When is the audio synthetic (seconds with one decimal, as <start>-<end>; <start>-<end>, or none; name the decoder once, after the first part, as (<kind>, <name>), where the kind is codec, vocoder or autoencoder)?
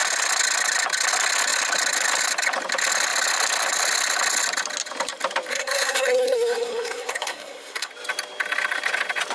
5.5-7.9 (codec, SNAC)